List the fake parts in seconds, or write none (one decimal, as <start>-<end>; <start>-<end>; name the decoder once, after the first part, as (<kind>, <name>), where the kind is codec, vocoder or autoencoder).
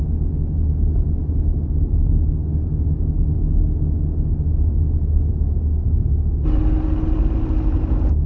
none